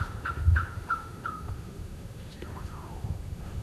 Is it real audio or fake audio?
fake